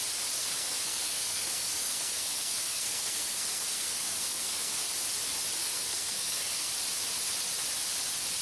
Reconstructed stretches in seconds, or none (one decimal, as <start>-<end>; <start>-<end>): 0.4-4.8; 5.6-6.7